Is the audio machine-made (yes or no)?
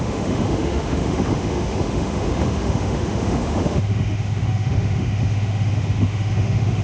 yes